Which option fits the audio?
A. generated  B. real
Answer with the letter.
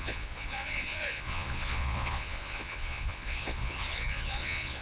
A